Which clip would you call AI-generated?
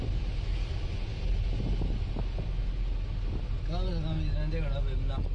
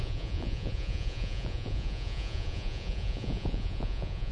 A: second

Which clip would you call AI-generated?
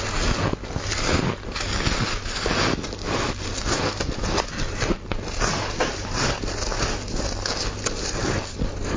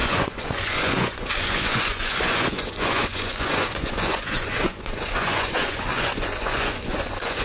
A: second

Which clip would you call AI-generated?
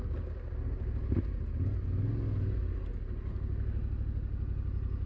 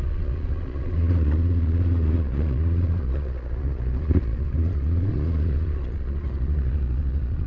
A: second